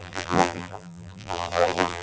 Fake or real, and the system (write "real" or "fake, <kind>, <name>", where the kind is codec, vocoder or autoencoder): fake, vocoder, BigVGAN v2